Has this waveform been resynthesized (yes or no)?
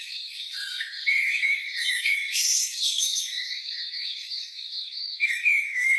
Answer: yes